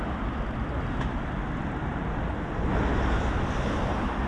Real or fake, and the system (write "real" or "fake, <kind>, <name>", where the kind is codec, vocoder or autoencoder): real